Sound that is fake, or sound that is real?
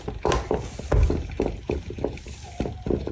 real